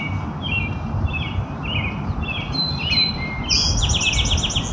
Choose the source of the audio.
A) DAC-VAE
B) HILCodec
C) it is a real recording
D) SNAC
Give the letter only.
C